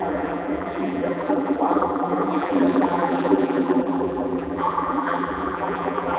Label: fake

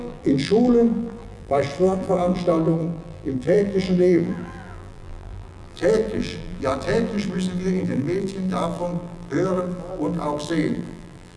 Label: fake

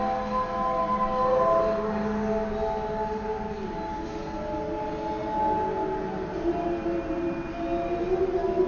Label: real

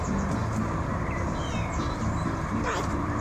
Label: fake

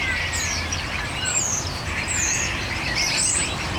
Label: fake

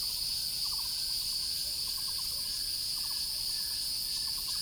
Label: real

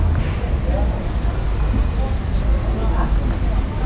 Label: real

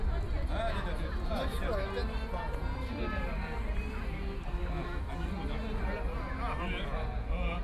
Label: real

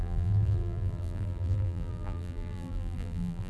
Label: fake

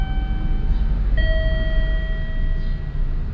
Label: real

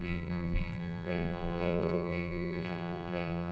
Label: fake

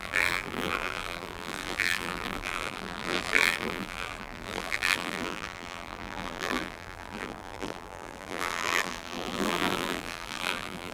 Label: fake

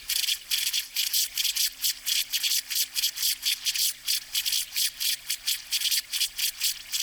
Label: real